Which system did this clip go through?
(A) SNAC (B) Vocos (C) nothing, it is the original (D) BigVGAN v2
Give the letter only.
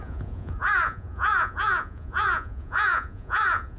B